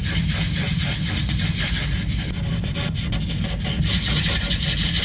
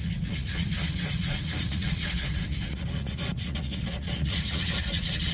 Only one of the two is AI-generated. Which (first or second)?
second